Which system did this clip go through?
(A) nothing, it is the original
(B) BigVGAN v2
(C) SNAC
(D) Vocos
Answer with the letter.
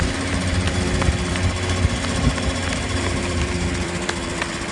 B